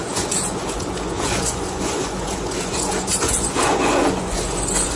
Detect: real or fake fake